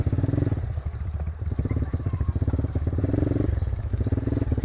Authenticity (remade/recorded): remade